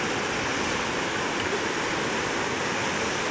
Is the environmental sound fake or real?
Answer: real